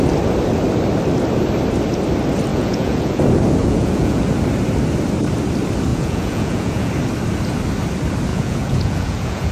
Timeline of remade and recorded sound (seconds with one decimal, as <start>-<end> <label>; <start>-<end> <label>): 0.0-2.5 recorded; 2.5-3.2 remade; 3.2-3.6 recorded; 3.6-4.2 remade; 4.2-5.9 recorded; 5.9-6.9 remade; 6.9-8.3 recorded; 8.3-9.5 remade